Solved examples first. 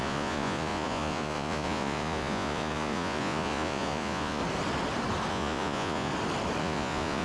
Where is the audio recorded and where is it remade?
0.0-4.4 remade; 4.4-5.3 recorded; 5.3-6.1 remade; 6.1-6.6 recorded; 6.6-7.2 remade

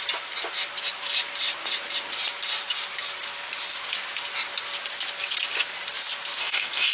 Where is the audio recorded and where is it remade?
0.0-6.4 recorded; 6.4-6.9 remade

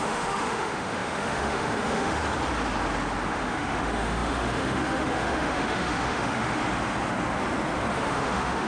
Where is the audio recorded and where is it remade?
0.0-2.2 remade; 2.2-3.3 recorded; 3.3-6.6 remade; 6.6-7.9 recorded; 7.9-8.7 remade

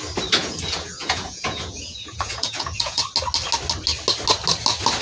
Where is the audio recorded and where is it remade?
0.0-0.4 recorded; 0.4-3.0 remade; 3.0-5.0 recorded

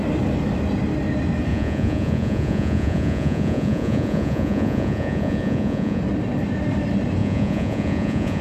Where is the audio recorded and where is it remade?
0.0-1.5 recorded; 1.5-6.0 remade; 6.0-7.2 recorded; 7.2-8.4 remade

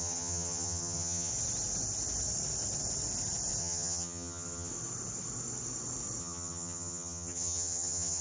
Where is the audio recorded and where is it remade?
0.0-1.3 remade; 1.3-3.6 recorded; 3.6-4.7 remade; 4.7-6.2 recorded; 6.2-8.2 remade